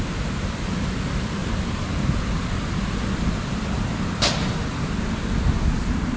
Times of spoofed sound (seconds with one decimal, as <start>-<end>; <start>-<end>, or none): none